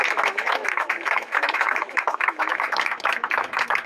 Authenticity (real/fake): fake